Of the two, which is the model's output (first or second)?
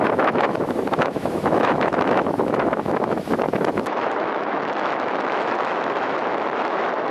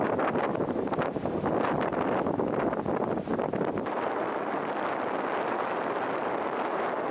first